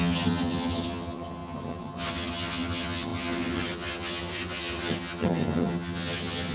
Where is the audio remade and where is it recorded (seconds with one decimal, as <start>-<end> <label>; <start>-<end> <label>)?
0.0-6.5 remade